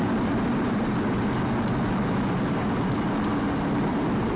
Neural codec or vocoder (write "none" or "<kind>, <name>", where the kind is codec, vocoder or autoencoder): none